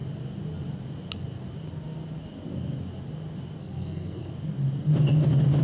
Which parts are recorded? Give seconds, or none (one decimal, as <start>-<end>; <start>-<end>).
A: 0.0-3.6; 4.3-5.6